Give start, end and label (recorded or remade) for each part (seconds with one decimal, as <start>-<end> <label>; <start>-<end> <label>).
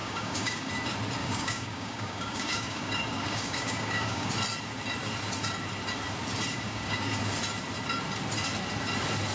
0.0-0.7 remade; 0.7-1.2 recorded; 1.2-4.3 remade; 4.3-6.5 recorded; 6.5-7.2 remade; 7.2-9.3 recorded